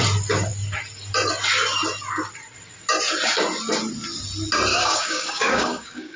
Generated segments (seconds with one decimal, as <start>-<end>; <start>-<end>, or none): 4.7-6.2